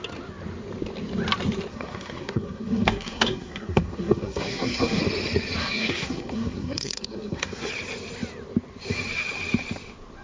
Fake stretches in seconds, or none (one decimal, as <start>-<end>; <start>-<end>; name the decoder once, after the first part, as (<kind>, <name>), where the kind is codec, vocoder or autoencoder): 1.7-5.0 (codec, SNAC); 5.6-7.7